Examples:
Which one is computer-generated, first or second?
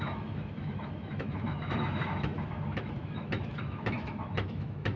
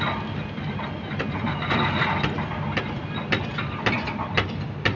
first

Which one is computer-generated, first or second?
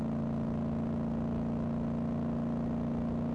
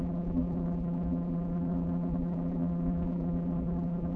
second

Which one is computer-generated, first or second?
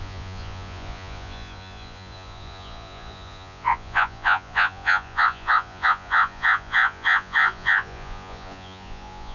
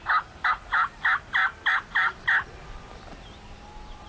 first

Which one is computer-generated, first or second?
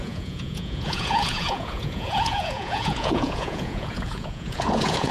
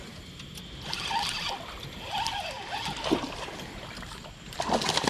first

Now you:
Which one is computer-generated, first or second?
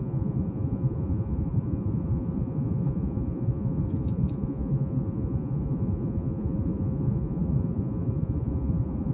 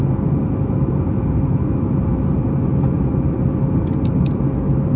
first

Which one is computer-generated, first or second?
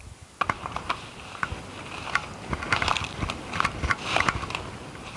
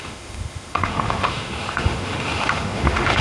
second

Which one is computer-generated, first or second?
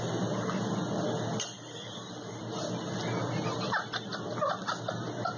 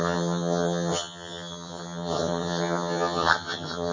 second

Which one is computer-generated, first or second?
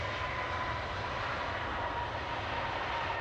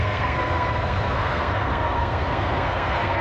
second